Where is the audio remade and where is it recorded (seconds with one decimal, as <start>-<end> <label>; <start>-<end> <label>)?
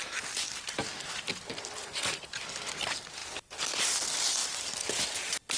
0.0-5.6 recorded